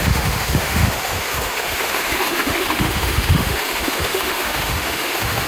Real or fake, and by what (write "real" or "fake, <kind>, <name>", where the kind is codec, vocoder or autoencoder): fake, autoencoder, DAC-VAE